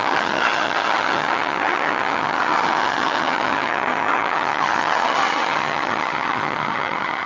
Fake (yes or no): yes